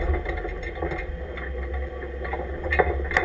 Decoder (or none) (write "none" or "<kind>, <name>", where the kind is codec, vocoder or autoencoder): none